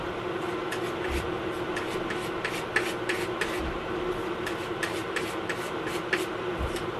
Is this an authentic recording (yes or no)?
yes